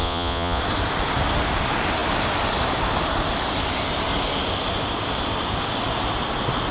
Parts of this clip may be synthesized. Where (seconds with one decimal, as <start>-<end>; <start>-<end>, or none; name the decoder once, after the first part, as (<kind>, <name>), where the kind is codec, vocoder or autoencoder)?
0.0-0.6 (vocoder, Vocos)